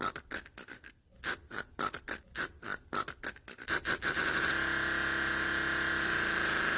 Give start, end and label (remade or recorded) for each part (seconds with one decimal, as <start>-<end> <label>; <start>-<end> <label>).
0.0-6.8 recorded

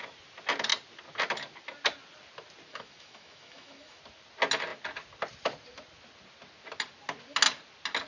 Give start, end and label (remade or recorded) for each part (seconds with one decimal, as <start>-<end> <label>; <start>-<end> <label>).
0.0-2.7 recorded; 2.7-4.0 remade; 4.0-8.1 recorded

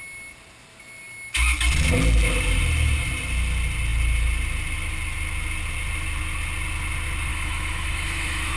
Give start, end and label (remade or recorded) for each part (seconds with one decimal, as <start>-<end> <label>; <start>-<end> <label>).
0.0-7.3 recorded; 7.3-8.6 remade

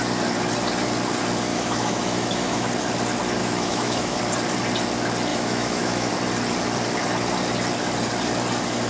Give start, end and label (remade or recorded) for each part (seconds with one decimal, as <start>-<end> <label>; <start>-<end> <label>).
0.0-1.5 recorded; 1.5-2.7 remade; 2.7-3.4 recorded; 3.4-4.2 remade; 4.2-5.3 recorded; 5.3-6.1 remade; 6.1-8.9 recorded

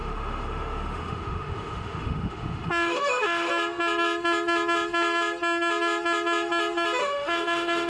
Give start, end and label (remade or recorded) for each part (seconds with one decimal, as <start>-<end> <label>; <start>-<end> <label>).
0.0-3.5 remade; 3.5-7.0 recorded; 7.0-7.9 remade

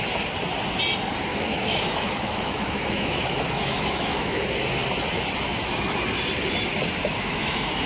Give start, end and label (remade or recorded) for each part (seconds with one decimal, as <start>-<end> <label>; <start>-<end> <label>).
0.0-1.3 recorded; 1.3-4.4 remade; 4.4-7.0 recorded; 7.0-7.9 remade

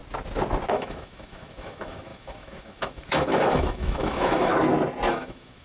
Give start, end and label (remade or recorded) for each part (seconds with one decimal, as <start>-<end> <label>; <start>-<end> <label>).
0.0-0.7 recorded; 0.7-4.5 remade; 4.5-5.1 recorded; 5.1-5.6 remade